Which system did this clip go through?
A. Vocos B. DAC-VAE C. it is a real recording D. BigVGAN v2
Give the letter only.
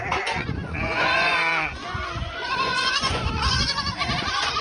A